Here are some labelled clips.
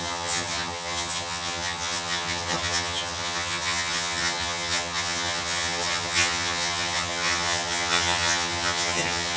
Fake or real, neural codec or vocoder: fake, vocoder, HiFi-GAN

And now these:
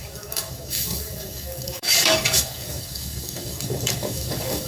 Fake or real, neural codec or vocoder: fake, codec, DAC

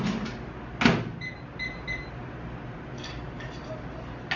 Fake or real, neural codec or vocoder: real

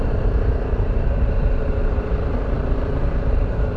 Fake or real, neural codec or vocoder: fake, vocoder, BigVGAN v2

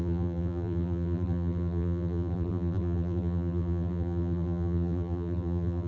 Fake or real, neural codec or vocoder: fake, vocoder, BigVGAN v2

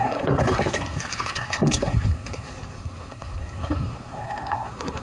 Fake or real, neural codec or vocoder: fake, codec, SNAC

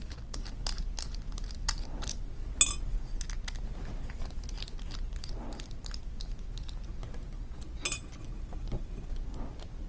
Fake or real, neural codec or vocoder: real